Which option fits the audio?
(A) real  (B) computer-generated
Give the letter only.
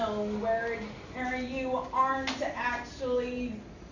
A